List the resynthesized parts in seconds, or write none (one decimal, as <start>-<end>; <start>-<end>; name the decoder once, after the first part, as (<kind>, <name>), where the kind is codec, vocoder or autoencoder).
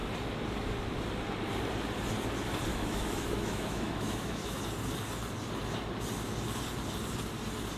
2.7-4.6 (autoencoder, DAC-VAE)